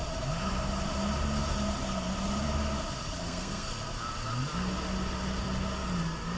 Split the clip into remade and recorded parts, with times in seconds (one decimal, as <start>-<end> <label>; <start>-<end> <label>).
0.0-3.2 recorded; 3.2-3.7 remade; 3.7-6.4 recorded